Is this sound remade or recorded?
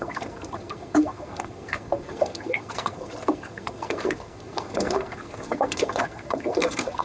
remade